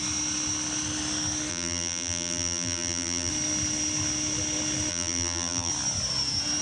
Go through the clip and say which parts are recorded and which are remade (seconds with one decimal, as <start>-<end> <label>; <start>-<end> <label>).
0.0-1.5 recorded; 1.5-3.3 remade; 3.3-4.9 recorded; 4.9-5.7 remade; 5.7-6.6 recorded